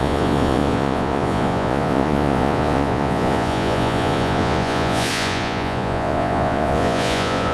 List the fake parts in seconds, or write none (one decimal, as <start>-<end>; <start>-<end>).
0.0-7.5